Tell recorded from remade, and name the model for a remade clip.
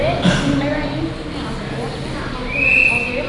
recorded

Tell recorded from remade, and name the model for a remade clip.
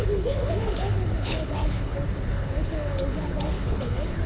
remade, codec, HILCodec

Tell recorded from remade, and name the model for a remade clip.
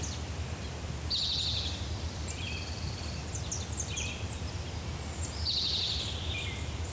recorded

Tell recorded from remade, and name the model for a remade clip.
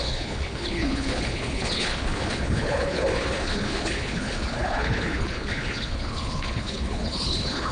remade, codec, HILCodec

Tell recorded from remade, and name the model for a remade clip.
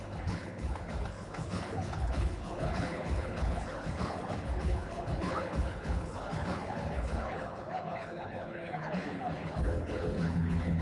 remade, codec, HILCodec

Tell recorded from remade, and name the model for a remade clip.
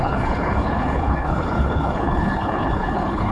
remade, codec, HILCodec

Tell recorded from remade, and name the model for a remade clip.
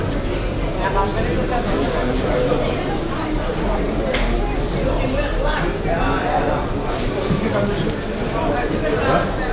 recorded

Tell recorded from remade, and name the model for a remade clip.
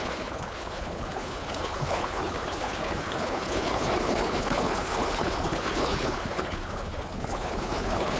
remade, codec, HILCodec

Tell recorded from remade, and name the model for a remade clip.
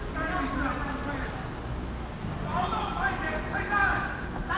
recorded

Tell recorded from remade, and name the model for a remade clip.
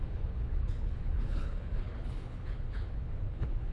remade, codec, HILCodec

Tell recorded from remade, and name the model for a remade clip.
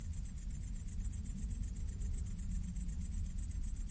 recorded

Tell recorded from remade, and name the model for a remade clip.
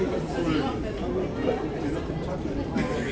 recorded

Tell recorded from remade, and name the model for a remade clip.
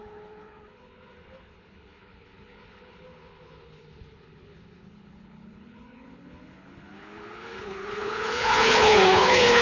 remade, codec, HILCodec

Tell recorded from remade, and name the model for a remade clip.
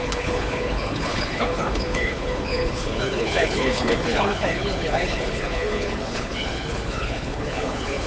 remade, codec, HILCodec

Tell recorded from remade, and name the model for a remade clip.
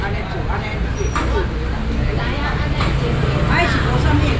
recorded